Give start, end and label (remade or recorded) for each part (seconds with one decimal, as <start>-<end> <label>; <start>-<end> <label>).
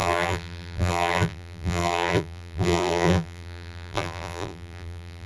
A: 0.0-5.3 remade